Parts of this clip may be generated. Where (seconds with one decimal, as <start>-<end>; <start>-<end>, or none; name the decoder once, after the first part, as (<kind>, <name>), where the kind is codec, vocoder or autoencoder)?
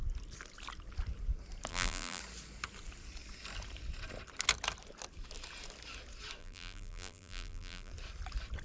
1.7-2.2 (vocoder, BigVGAN v2); 6.4-7.9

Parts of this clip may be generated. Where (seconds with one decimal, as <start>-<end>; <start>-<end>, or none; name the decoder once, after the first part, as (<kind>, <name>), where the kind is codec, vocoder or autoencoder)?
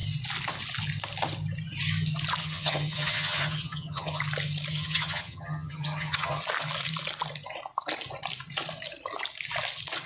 2.4-4.2 (vocoder, HiFi-GAN); 4.7-6.4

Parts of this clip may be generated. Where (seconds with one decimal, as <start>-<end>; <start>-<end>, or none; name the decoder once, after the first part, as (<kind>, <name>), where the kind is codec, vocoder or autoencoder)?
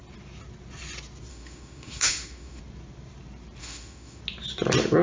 1.3-2.6 (autoencoder, DAC-VAE); 3.6-4.2